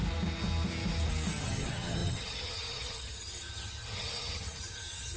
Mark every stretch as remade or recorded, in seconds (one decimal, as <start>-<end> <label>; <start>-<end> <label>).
0.0-1.4 recorded; 1.4-5.2 remade